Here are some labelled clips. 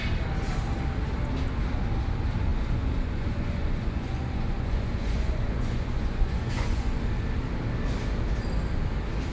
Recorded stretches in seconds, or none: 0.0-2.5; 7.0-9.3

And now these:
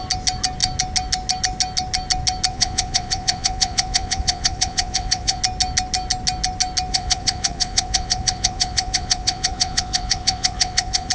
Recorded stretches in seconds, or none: 0.0-2.5; 5.4-6.9

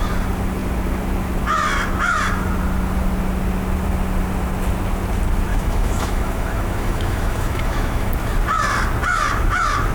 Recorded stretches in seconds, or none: 0.0-5.5; 8.1-9.9